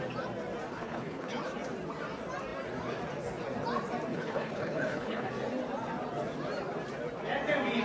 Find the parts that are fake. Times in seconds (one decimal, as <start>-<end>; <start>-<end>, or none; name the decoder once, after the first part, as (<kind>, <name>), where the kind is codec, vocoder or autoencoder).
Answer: 0.7-1.3 (codec, HILCodec); 4.1-5.3